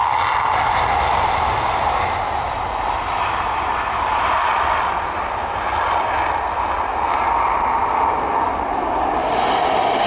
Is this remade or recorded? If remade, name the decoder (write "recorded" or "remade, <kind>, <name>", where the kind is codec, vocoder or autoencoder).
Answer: recorded